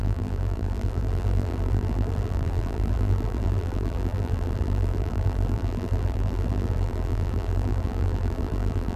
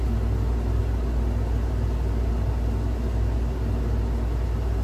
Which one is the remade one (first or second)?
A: first